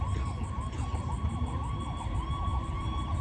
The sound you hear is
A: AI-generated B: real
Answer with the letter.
B